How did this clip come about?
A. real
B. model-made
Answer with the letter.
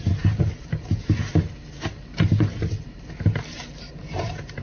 B